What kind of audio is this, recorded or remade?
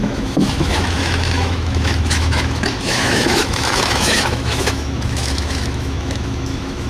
remade